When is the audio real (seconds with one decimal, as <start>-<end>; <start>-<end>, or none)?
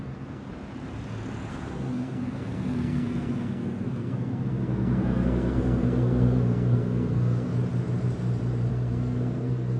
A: 0.5-1.5; 7.5-8.7